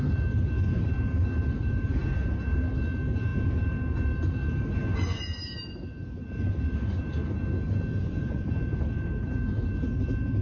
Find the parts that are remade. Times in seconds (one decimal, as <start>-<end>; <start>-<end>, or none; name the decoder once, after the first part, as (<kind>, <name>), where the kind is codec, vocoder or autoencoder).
8.0-8.5 (vocoder, Vocos)